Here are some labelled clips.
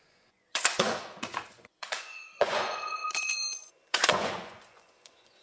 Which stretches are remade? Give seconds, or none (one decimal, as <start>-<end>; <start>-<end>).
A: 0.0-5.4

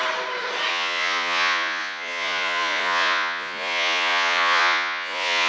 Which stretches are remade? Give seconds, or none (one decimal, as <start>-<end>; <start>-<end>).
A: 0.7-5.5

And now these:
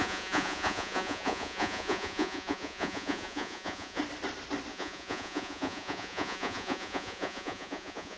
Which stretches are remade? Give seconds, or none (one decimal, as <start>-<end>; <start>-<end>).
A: 0.0-4.0; 4.7-8.2

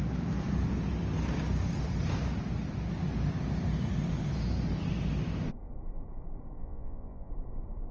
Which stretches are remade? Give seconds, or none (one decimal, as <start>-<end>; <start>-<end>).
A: 6.6-7.3

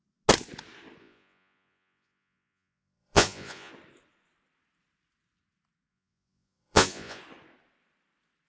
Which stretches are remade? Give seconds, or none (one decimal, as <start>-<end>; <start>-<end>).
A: 1.0-3.7; 5.9-7.2

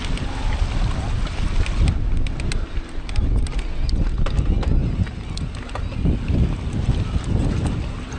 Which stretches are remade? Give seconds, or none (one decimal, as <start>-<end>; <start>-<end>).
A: none